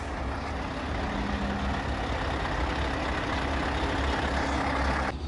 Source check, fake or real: real